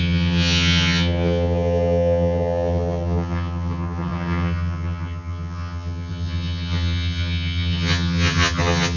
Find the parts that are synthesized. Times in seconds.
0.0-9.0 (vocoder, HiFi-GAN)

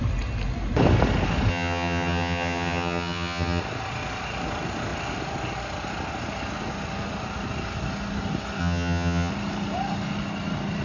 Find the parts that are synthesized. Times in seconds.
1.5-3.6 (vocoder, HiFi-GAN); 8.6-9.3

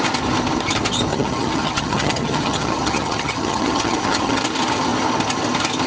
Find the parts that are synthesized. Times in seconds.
1.1-4.4 (vocoder, HiFi-GAN)

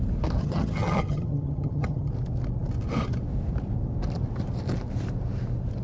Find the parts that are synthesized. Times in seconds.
0.4-2.1 (vocoder, HiFi-GAN)

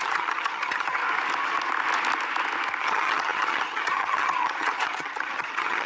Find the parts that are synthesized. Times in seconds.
0.0-1.0 (vocoder, HiFi-GAN); 2.8-5.9